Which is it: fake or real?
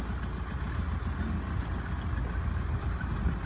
real